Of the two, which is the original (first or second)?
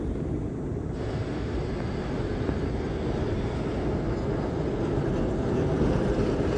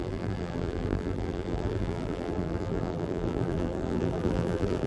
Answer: first